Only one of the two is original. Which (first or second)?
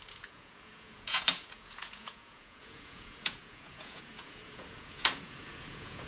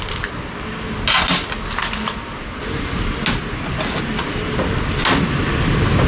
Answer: second